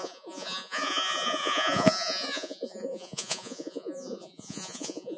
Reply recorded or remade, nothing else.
remade